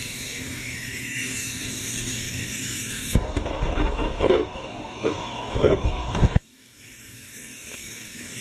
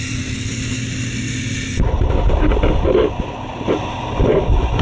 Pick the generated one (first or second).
first